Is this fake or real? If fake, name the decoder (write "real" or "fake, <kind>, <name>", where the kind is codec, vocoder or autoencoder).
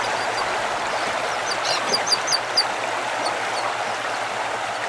real